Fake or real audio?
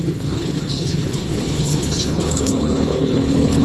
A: fake